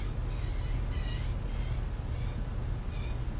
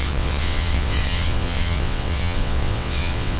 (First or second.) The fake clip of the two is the second